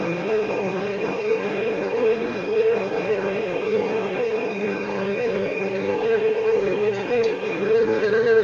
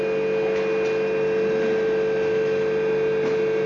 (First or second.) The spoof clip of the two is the first